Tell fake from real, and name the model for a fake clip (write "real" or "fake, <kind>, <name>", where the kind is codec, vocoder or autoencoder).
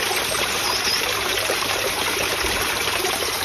fake, vocoder, BigVGAN v2